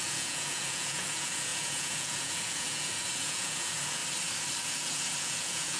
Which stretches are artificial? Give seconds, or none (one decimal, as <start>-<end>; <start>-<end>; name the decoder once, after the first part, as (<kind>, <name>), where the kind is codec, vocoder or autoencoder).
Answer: 0.0-4.0 (vocoder, Vocos); 4.7-5.8